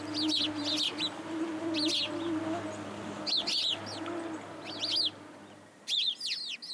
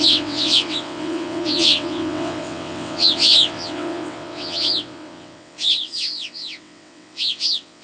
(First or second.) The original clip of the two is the first